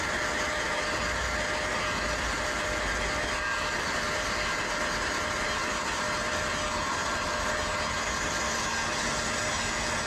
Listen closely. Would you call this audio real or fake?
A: real